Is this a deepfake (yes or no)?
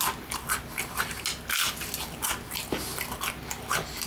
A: no